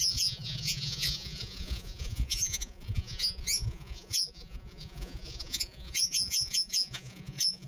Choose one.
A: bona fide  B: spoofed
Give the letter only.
B